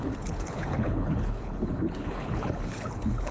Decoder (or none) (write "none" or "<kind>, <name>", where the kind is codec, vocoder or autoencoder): codec, HILCodec